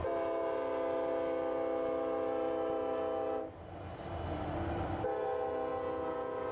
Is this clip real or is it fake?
real